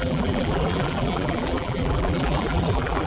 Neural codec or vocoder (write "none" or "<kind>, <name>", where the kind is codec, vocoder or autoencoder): vocoder, BigVGAN v2